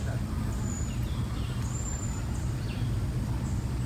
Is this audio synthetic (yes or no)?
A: no